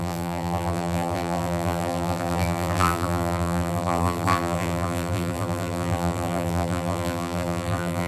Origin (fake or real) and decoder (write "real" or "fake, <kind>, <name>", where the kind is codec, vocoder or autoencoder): fake, vocoder, BigVGAN v2